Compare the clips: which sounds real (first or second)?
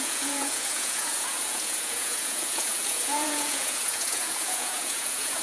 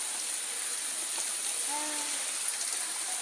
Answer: second